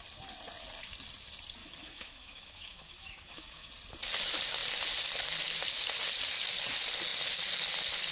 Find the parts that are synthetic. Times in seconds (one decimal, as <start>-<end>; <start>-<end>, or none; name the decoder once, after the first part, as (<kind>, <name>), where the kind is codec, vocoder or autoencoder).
1.6-3.7 (autoencoder, DAC-VAE)

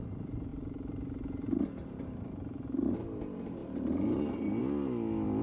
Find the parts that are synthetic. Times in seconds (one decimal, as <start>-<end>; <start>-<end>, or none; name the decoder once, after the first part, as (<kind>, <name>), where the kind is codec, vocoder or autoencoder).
none

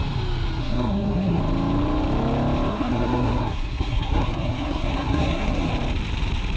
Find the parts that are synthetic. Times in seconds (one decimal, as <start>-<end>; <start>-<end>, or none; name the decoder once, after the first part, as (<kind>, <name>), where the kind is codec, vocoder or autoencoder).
0.6-1.4 (codec, SNAC); 2.7-5.7

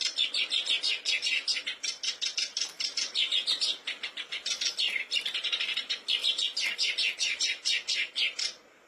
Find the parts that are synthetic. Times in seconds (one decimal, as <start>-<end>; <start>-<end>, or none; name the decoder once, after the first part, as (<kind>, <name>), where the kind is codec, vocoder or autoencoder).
0.0-3.4 (vocoder, BigVGAN v2); 4.1-8.9

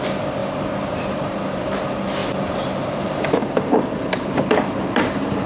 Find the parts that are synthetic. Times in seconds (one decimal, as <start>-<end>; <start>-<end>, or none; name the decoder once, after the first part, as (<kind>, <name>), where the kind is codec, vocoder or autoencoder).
2.2-5.5 (vocoder, BigVGAN v2)

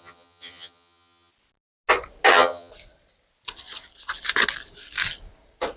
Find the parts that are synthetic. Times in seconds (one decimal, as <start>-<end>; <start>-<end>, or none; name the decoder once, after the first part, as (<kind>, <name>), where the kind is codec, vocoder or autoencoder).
0.0-1.3 (vocoder, HiFi-GAN); 2.3-2.7

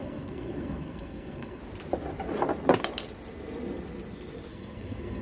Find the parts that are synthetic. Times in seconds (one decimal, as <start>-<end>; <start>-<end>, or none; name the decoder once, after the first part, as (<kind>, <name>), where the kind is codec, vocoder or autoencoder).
0.0-1.6 (codec, SNAC); 4.5-5.2

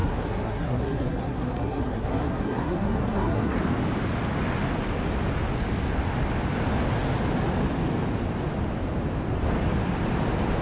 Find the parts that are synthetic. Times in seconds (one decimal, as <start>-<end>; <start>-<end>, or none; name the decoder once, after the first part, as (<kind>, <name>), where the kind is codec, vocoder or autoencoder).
0.0-3.6 (codec, SNAC)